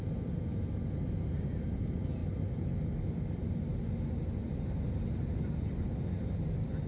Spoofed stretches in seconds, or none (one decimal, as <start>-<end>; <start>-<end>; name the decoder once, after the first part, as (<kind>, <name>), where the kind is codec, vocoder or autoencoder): none